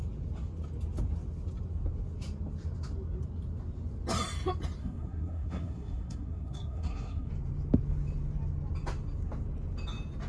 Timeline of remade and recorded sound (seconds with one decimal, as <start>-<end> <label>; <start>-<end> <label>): 0.0-4.8 recorded; 4.8-7.3 remade; 7.3-10.3 recorded

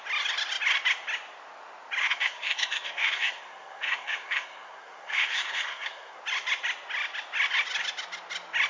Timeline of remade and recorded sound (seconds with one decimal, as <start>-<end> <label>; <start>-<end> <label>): 0.0-2.0 recorded; 2.0-6.2 remade; 6.2-8.7 recorded